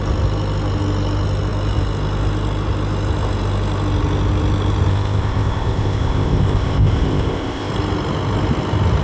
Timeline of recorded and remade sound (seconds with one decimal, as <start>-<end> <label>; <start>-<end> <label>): 0.0-4.9 recorded; 4.9-7.7 remade; 7.7-9.0 recorded